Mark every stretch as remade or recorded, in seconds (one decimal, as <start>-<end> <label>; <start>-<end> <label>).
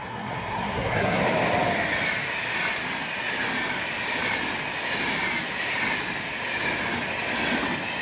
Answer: 0.0-1.2 remade; 1.2-8.0 recorded